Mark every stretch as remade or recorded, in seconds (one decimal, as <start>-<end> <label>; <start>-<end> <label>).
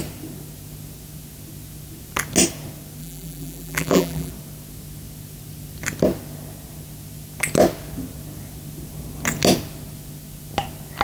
0.0-3.0 recorded; 3.0-4.3 remade; 4.3-11.0 recorded